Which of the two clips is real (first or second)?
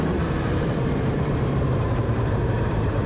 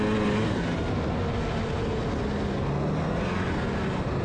second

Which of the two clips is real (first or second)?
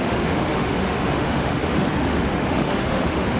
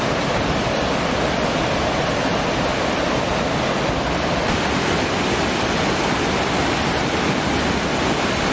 second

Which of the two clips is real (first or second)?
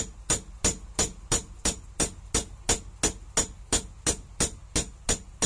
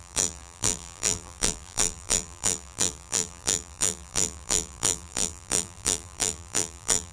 first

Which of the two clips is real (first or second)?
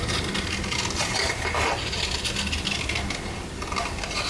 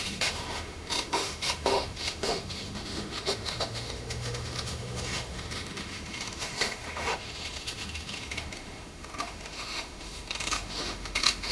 first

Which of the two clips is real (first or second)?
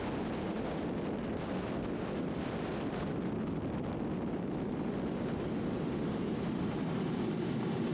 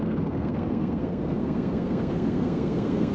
first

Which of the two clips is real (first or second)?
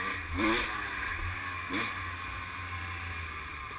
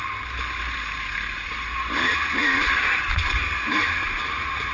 first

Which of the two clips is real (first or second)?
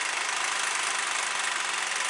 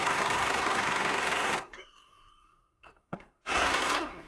first